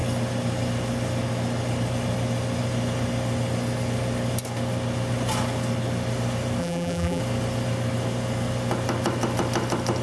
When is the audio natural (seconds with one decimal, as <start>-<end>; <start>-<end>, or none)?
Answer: 0.0-6.6; 7.2-10.0